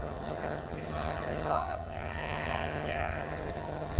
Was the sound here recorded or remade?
remade